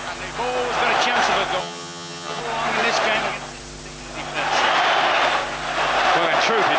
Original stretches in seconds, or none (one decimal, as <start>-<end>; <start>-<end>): 0.0-1.6; 2.4-6.8